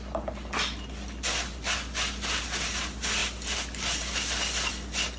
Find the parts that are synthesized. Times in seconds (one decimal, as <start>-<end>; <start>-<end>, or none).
none